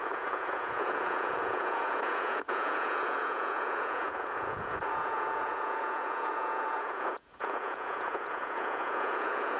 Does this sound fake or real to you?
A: fake